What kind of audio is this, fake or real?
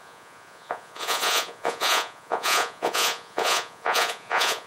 fake